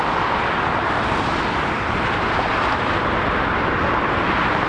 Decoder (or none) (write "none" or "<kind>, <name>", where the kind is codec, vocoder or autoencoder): none